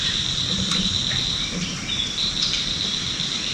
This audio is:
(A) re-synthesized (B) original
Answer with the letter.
B